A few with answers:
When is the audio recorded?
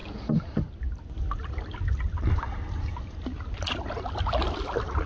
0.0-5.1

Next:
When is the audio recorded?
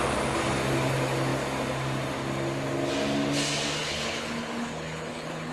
0.0-3.8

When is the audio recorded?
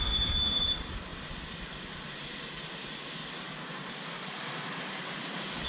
1.1-2.1; 3.2-4.0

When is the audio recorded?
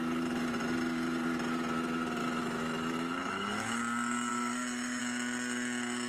0.0-2.2; 3.8-4.3; 5.0-6.1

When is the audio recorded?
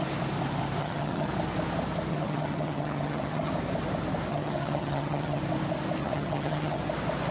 0.0-0.8; 1.3-2.1; 3.5-4.3; 5.4-6.0; 6.8-7.3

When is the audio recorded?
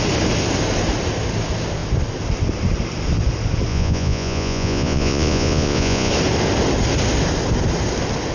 0.0-3.7; 6.1-8.3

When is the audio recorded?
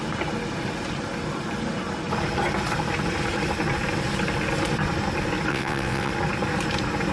0.0-5.5; 6.1-7.1